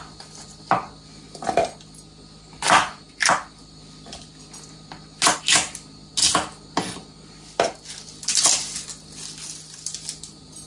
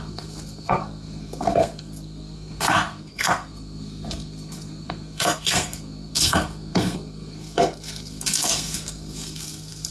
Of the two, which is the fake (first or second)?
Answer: second